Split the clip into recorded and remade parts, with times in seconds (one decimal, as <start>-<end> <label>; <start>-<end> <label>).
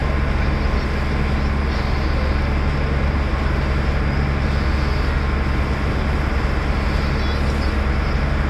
0.0-8.5 recorded